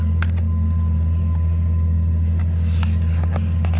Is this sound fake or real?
real